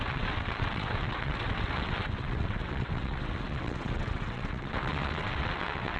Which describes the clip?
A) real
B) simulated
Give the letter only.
B